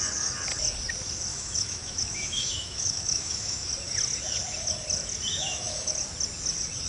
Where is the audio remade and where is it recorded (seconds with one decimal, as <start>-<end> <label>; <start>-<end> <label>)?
0.0-1.3 recorded; 1.3-3.7 remade; 3.7-5.3 recorded; 5.3-5.9 remade; 5.9-6.9 recorded

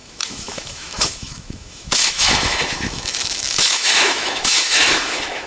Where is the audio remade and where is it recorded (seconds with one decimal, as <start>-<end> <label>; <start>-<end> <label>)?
0.0-5.5 remade